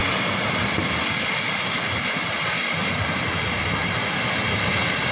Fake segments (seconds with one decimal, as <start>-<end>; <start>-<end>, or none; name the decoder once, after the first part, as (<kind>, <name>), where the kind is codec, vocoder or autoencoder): none